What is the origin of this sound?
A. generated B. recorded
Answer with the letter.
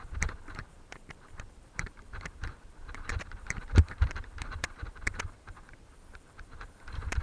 A